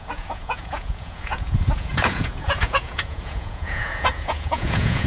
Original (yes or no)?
no